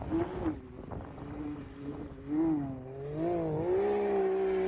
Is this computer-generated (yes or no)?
no